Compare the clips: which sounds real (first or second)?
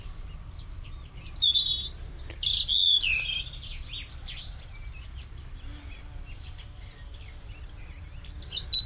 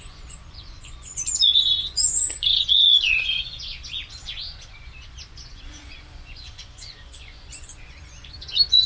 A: first